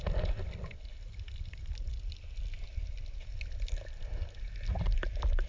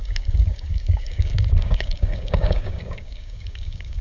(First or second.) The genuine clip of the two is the first